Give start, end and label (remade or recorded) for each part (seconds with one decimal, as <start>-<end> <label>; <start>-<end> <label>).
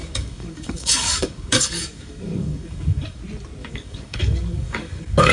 0.0-3.2 remade; 3.2-3.6 recorded; 3.6-5.3 remade